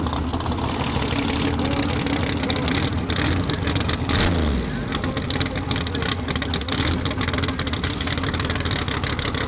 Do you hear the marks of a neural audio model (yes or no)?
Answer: no